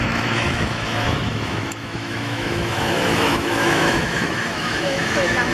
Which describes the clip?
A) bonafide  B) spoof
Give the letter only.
B